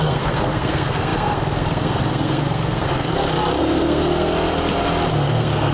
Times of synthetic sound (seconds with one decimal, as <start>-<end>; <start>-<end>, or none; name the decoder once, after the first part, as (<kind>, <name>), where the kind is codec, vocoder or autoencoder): 0.0-3.1 (codec, SNAC); 3.6-4.3; 5.1-5.7